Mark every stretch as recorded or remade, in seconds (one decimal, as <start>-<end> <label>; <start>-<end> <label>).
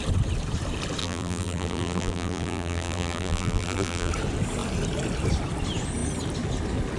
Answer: 0.0-1.0 recorded; 1.0-4.1 remade; 4.1-7.0 recorded